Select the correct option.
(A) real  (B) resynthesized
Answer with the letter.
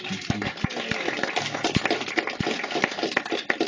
A